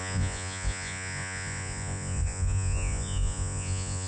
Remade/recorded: remade